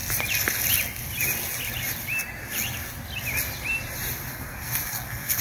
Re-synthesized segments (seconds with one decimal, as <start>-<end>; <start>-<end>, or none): 4.3-5.4